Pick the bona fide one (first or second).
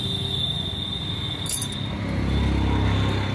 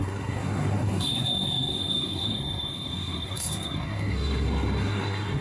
first